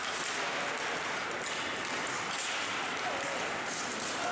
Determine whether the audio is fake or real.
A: real